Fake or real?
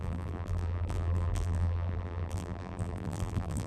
fake